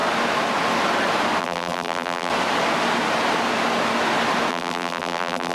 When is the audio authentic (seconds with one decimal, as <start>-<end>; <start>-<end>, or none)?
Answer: 0.0-1.4; 2.3-4.5